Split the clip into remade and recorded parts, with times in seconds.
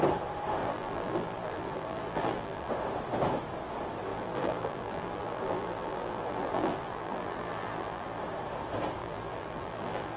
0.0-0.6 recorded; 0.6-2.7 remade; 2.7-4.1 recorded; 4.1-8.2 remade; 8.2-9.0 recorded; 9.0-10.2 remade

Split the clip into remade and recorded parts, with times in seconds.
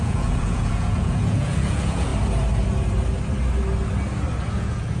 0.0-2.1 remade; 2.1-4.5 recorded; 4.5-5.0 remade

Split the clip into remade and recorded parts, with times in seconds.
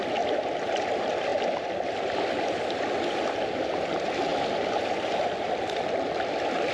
0.0-1.3 recorded; 1.3-3.4 remade; 3.4-4.3 recorded; 4.3-4.9 remade; 4.9-6.7 recorded